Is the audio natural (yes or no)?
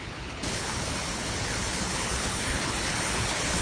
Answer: no